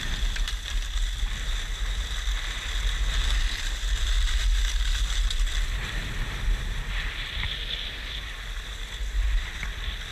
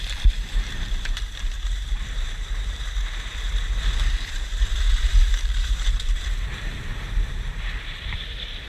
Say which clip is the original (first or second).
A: first